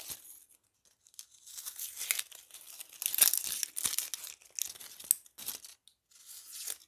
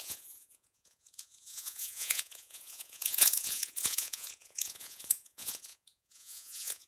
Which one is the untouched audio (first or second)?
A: first